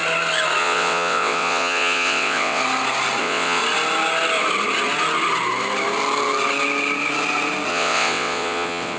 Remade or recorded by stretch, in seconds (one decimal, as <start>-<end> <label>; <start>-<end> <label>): 0.0-0.6 recorded; 0.6-2.6 remade; 2.6-3.2 recorded; 3.2-3.6 remade; 3.6-7.7 recorded; 7.7-9.0 remade